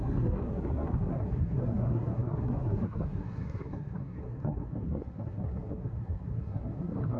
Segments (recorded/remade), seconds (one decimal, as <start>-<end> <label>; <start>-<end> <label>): 0.0-7.2 remade

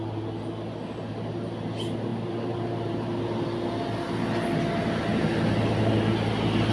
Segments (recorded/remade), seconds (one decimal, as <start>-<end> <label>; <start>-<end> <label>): 0.0-2.1 recorded; 2.1-3.2 remade; 3.2-6.7 recorded

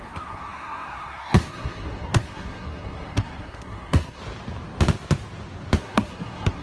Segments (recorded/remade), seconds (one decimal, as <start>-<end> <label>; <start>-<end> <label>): 0.0-4.2 remade; 4.2-5.8 recorded; 5.8-6.6 remade